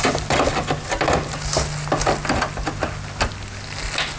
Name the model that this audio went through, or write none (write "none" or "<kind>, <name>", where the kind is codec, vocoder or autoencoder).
none